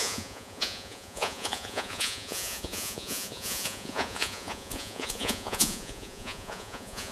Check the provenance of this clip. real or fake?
fake